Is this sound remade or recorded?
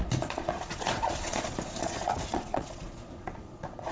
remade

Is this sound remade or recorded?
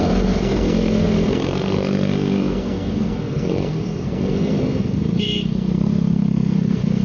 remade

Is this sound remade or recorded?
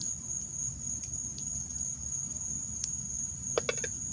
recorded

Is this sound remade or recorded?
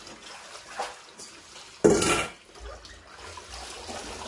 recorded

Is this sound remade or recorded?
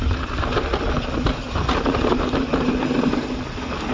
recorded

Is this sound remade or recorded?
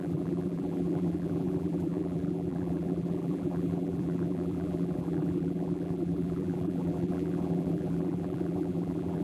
remade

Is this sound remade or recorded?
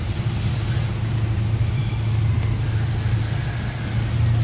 recorded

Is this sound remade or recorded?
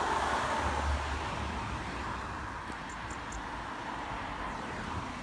recorded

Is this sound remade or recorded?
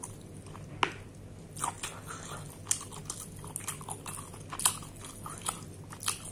recorded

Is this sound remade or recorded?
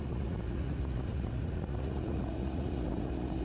remade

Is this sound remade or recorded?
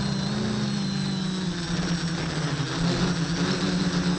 recorded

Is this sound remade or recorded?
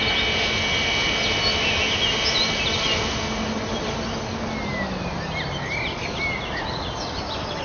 recorded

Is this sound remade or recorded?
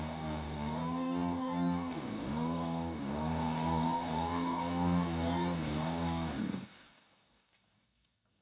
remade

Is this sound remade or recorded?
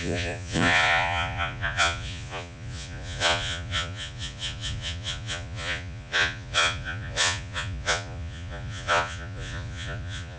remade